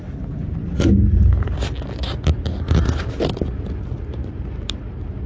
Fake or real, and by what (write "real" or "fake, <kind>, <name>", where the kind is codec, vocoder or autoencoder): real